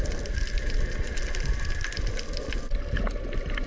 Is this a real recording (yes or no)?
yes